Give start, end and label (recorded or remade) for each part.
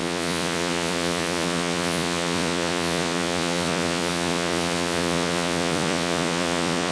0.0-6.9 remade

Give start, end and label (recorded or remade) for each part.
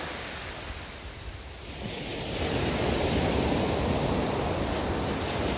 0.0-5.6 recorded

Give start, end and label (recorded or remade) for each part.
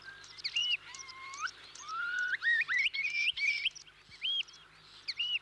0.0-0.6 recorded; 0.6-3.8 remade; 3.8-5.4 recorded